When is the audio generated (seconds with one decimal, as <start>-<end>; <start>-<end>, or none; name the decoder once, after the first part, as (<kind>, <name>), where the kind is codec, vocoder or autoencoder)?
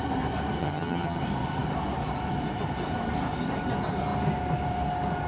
0.6-1.2 (vocoder, HiFi-GAN)